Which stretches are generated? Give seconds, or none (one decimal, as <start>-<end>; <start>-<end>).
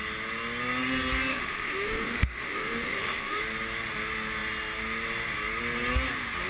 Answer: 1.3-3.4